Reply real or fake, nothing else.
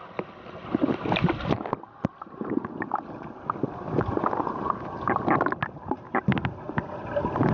real